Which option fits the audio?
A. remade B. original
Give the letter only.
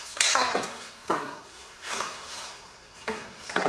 A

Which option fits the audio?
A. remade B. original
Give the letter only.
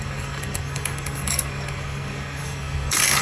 A